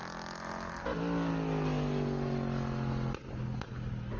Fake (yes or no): no